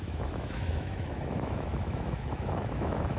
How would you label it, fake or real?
fake